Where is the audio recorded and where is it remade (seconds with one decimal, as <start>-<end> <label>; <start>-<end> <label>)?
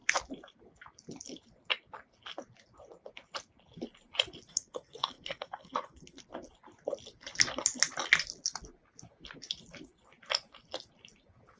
0.0-4.5 recorded; 4.5-6.2 remade; 6.2-11.6 recorded